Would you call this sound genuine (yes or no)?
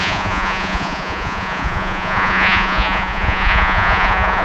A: no